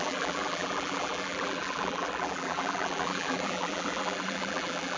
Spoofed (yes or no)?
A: yes